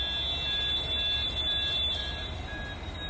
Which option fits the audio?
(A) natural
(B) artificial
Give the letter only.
A